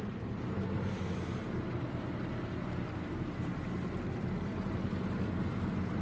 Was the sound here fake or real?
real